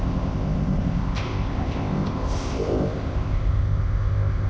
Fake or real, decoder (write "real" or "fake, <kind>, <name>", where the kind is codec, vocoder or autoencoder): fake, codec, ZipCodec